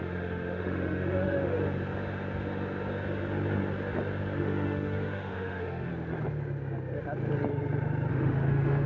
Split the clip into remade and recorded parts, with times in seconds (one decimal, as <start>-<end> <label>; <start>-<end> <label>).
0.0-1.6 remade; 1.6-4.4 recorded; 4.4-5.9 remade; 5.9-8.1 recorded; 8.1-8.9 remade